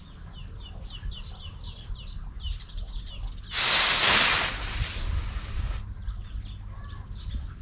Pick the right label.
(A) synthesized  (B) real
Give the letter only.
B